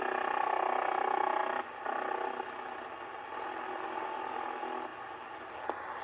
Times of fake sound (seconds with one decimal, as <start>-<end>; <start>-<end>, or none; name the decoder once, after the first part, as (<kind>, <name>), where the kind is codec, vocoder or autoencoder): none